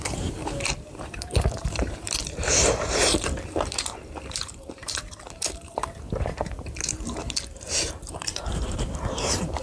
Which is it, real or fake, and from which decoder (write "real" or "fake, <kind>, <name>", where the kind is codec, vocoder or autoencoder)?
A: fake, vocoder, BigVGAN v2